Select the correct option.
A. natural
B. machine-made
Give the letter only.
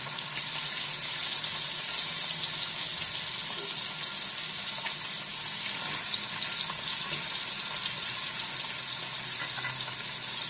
A